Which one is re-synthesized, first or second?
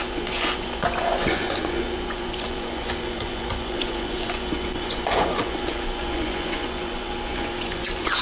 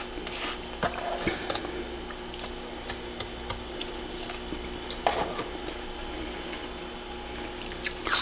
first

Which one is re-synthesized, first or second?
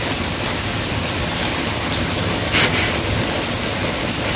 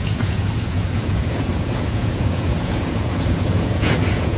second